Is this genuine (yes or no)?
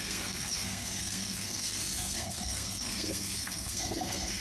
no